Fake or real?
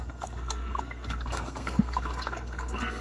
fake